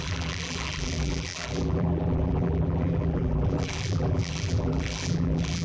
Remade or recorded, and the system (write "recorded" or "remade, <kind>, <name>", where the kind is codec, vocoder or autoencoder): remade, vocoder, BigVGAN v2